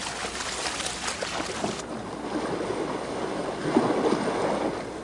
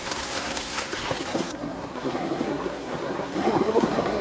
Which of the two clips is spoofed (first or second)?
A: second